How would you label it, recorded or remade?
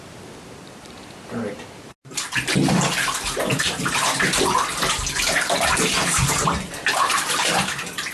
recorded